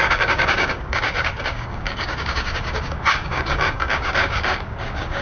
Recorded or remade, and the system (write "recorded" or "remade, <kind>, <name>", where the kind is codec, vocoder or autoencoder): remade, codec, DAC